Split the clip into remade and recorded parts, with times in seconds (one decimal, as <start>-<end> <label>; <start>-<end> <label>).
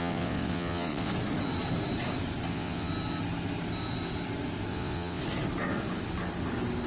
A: 0.0-1.1 remade; 1.1-2.5 recorded; 2.5-2.9 remade; 2.9-4.7 recorded; 4.7-5.2 remade; 5.2-6.9 recorded